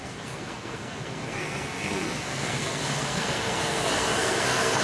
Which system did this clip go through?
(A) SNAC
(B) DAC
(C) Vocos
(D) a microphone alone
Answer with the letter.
A